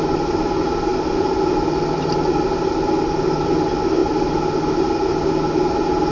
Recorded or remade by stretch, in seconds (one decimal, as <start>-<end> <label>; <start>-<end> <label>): 0.0-6.1 recorded